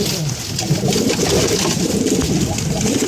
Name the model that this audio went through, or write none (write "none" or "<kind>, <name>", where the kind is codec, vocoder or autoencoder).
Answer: none